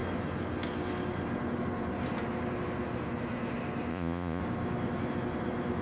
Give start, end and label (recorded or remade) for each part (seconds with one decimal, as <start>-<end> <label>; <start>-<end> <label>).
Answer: 0.0-3.9 recorded; 3.9-4.4 remade; 4.4-5.8 recorded